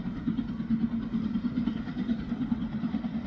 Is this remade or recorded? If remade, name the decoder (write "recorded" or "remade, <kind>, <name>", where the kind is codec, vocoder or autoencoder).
recorded